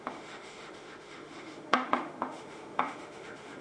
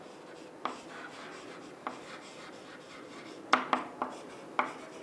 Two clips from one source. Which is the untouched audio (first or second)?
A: second